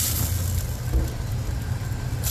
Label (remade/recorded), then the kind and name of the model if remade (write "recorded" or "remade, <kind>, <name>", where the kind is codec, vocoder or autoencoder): recorded